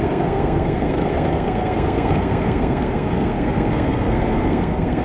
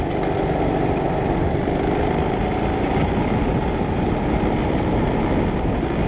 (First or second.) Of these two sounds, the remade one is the first